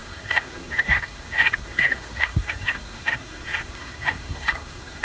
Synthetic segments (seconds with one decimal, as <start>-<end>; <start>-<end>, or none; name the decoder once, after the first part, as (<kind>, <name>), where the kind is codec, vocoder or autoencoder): 0.0-5.0 (codec, SNAC)